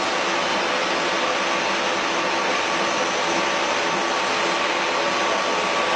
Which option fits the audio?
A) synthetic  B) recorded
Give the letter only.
B